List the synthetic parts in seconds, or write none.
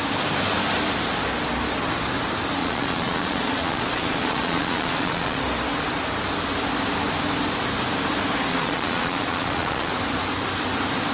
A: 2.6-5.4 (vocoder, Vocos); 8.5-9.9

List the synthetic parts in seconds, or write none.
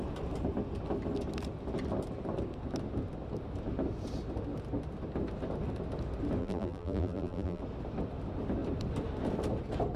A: 6.4-7.6 (vocoder, BigVGAN v2)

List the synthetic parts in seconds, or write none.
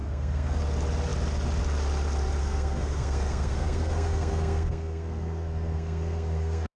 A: 0.0-0.6 (codec, SNAC); 2.4-6.8